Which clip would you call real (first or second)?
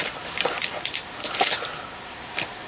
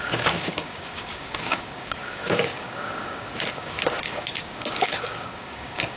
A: first